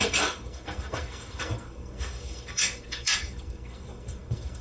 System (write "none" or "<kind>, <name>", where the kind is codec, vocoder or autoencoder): codec, SNAC